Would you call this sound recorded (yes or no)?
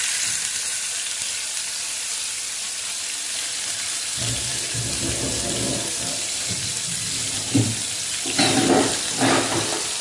yes